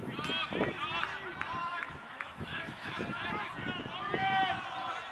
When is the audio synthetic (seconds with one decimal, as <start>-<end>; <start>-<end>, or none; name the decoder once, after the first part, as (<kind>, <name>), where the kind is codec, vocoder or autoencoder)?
1.6-3.0 (autoencoder, DAC-VAE)